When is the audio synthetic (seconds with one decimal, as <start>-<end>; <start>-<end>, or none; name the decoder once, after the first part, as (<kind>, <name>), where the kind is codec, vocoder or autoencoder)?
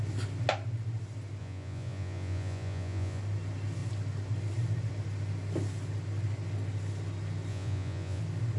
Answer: 1.4-3.2 (vocoder, Vocos); 7.5-8.2